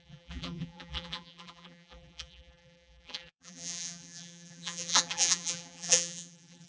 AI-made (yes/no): yes